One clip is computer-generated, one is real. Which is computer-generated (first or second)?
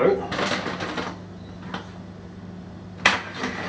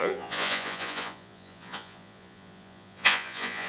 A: second